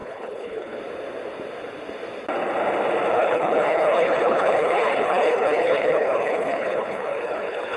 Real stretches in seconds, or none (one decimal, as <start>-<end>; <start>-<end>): 0.8-3.1